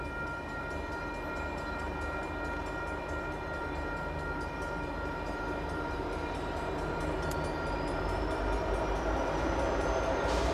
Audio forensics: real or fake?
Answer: fake